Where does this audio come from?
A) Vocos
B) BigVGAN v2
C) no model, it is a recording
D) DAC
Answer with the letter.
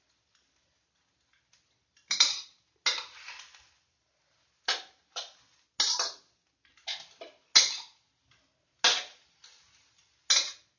C